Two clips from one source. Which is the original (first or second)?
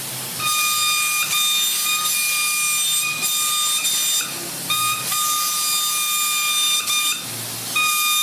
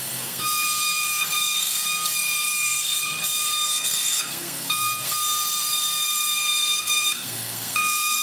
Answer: first